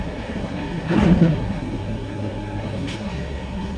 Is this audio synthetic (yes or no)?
yes